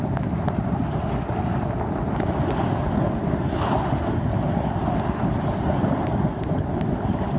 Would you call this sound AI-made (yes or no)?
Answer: no